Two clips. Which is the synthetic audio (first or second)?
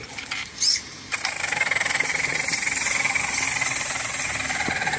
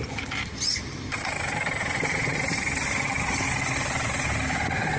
second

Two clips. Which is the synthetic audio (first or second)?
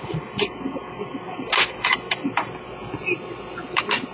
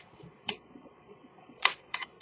second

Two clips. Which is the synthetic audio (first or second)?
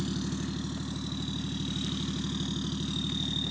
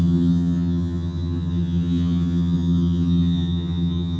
second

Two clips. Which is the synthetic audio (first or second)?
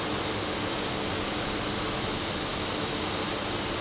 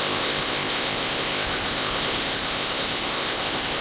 second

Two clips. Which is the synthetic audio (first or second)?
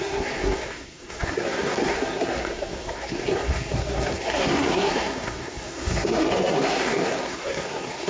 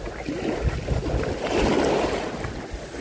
first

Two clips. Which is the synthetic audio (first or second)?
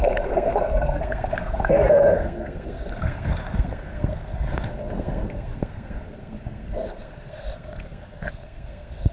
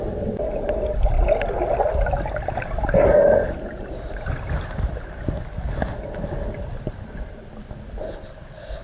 first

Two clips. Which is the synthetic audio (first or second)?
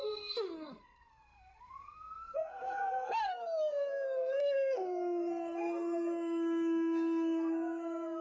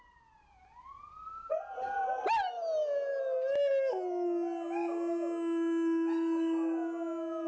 first